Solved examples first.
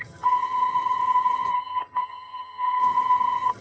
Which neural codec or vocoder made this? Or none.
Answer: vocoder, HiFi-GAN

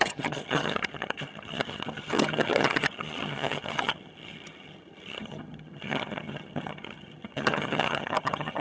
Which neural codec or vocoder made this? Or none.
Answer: vocoder, HiFi-GAN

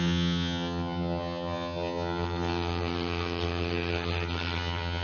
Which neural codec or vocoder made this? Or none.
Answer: vocoder, HiFi-GAN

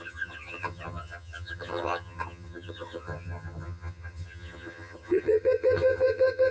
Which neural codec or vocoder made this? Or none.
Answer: vocoder, HiFi-GAN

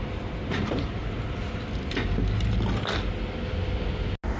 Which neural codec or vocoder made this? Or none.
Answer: none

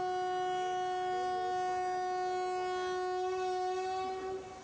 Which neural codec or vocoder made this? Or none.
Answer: none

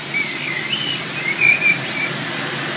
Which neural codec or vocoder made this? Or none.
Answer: none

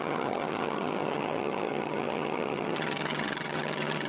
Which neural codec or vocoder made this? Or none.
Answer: vocoder, HiFi-GAN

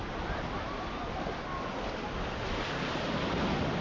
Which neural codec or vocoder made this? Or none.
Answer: none